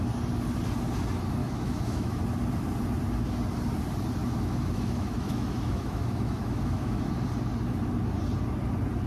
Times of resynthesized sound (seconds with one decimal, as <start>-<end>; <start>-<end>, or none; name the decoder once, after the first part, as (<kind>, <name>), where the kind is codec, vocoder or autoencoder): 1.4-2.2 (autoencoder, DAC-VAE); 4.2-7.0